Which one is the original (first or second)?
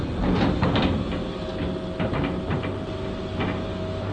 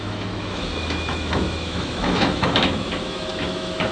first